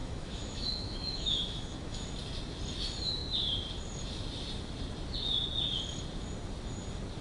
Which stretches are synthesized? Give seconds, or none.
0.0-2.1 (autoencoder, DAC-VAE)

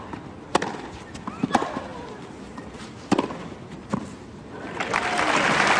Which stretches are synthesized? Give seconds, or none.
none

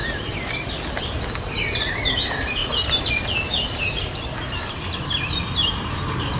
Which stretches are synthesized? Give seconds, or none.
none

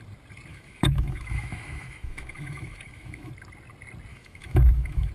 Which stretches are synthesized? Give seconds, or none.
0.5-3.3 (autoencoder, DAC-VAE); 4.1-5.1

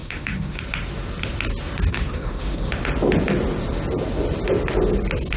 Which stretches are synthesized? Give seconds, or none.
0.0-0.6 (autoencoder, DAC-VAE); 1.9-2.7

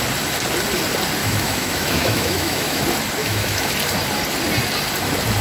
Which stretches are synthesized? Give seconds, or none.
1.2-2.8 (autoencoder, DAC-VAE); 3.2-3.7

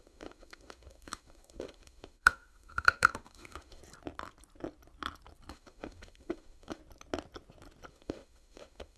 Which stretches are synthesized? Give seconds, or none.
0.0-3.8 (autoencoder, DAC-VAE); 5.5-6.8; 7.9-9.0